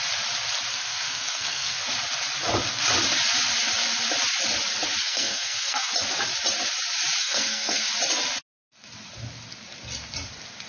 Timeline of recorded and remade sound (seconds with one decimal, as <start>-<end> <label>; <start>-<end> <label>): 0.0-0.7 recorded; 0.7-1.8 remade; 1.8-5.0 recorded; 5.0-5.9 remade; 5.9-7.2 recorded; 7.2-7.9 remade; 7.9-10.7 recorded